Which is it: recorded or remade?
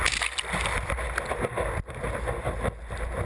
recorded